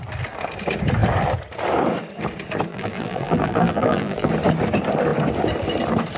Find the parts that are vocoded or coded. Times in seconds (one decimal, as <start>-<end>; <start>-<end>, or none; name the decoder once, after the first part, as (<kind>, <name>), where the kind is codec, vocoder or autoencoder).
2.7-4.3 (vocoder, BigVGAN v2)